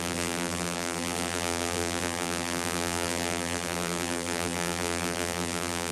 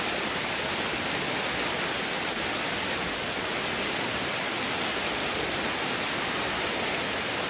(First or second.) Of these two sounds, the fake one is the first